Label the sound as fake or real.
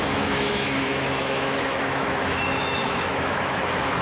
fake